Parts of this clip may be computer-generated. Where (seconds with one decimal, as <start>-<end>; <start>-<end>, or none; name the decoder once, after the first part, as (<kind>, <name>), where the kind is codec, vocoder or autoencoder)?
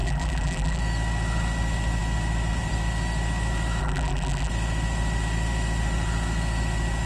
0.0-0.8 (vocoder, BigVGAN v2); 3.8-4.5